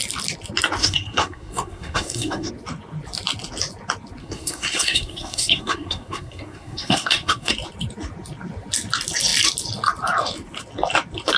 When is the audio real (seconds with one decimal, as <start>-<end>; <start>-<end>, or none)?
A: 0.0-0.8; 2.5-4.2; 7.5-11.4